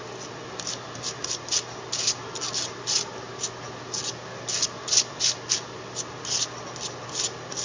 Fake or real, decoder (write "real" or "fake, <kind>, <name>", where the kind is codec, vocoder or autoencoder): real